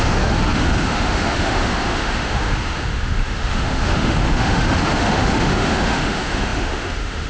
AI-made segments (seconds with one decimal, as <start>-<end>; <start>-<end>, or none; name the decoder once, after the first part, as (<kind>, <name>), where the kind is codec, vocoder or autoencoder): 0.0-7.3 (autoencoder, DAC-VAE)